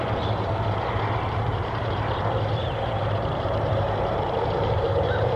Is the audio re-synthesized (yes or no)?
yes